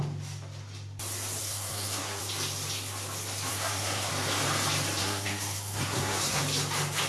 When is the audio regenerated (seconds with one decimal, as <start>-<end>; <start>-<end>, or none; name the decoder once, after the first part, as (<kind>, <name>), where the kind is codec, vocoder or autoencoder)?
1.4-2.2 (codec, SNAC); 3.5-4.1; 5.0-6.4